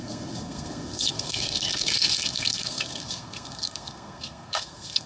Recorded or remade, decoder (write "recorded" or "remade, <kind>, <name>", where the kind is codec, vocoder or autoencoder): remade, codec, SNAC